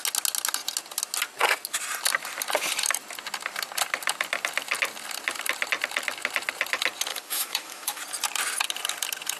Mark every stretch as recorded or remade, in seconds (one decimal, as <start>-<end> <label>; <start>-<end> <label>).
0.0-7.1 recorded; 7.1-8.0 remade; 8.0-9.4 recorded